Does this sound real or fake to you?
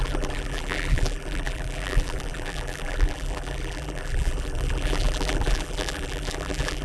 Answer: fake